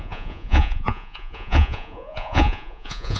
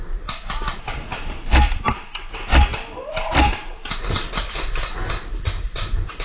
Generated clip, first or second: first